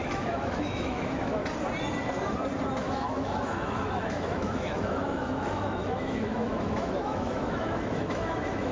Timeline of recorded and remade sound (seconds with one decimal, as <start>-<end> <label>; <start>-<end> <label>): 0.0-1.4 remade; 1.4-2.7 recorded; 2.7-8.7 remade